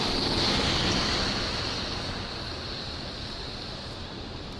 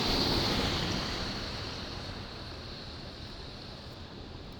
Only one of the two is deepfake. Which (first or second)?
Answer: second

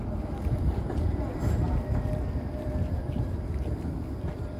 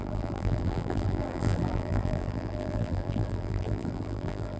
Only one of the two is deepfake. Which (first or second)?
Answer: second